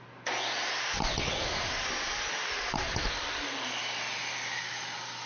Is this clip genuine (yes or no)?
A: yes